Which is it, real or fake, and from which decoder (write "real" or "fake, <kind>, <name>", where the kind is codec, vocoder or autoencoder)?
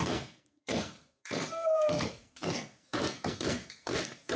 fake, codec, SNAC